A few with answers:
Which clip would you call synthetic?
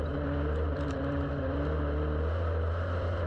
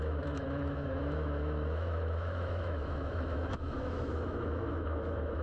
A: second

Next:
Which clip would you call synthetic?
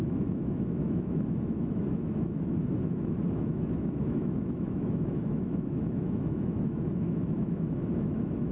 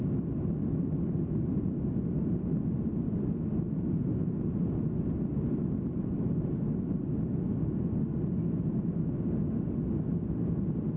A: first